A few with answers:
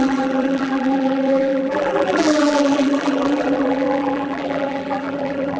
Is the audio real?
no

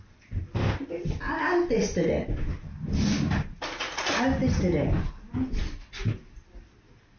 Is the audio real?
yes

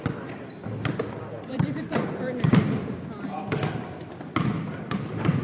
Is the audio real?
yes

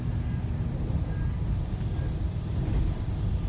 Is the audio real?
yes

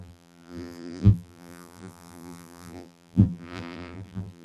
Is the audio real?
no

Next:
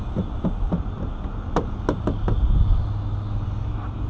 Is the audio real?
yes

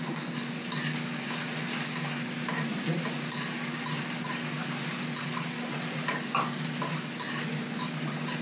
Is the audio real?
yes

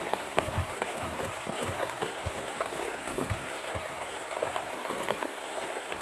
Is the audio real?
no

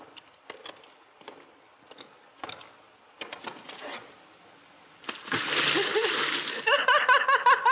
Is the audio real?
yes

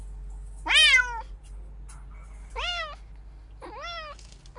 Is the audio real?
yes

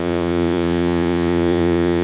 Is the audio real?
no